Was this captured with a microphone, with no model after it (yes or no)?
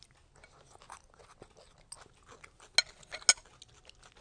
yes